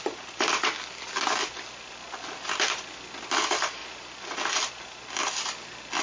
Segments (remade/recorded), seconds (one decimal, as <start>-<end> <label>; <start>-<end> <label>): 0.0-6.0 recorded